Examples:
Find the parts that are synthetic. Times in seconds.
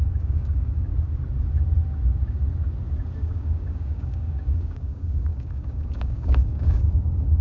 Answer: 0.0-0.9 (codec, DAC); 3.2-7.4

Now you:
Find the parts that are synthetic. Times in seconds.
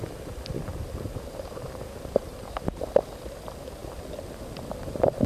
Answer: 0.7-1.8 (vocoder, BigVGAN v2); 2.3-2.9